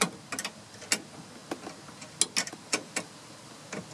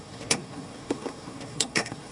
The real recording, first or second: first